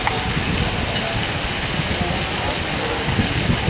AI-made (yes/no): no